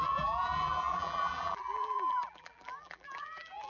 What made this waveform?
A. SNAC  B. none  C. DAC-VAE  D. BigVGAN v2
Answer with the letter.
D